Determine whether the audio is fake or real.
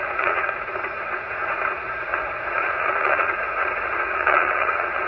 fake